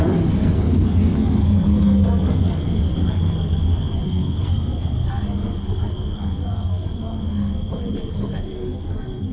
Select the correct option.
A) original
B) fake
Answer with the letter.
B